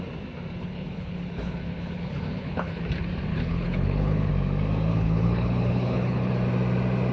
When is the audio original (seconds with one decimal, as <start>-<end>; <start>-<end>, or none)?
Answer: 0.0-0.6; 2.8-3.3; 4.3-4.9; 6.3-7.1

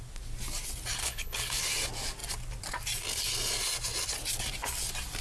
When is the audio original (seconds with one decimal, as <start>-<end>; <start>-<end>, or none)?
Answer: 0.0-1.0; 1.6-5.2

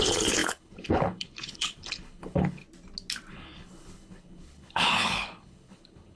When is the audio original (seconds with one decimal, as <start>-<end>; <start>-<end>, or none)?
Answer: 2.6-3.3

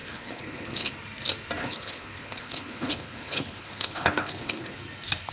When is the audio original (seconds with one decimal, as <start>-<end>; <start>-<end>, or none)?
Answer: 0.9-1.6; 4.8-5.3

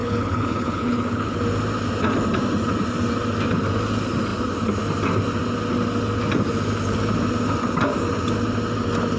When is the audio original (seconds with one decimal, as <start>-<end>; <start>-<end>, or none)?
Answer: 1.4-9.2

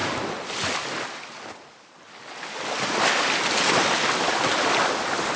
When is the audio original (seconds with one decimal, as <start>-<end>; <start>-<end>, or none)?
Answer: 0.0-5.4

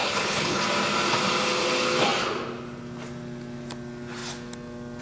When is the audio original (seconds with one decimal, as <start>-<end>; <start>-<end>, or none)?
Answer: 0.6-5.0